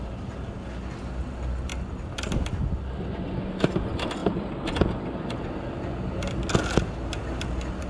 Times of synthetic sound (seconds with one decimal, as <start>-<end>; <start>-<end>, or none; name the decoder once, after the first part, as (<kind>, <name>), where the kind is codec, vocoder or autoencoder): none